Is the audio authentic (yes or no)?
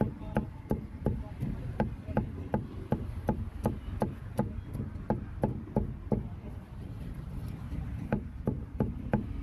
yes